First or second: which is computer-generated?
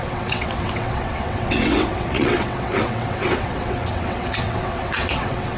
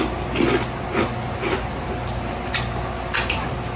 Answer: first